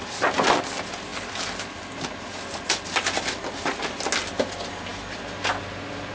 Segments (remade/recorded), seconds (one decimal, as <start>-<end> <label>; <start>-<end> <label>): 0.0-6.1 recorded